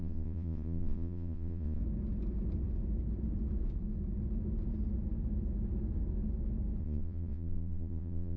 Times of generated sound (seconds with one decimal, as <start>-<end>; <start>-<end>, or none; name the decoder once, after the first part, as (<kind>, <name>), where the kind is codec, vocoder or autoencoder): 0.0-1.8 (vocoder, Vocos); 6.8-8.4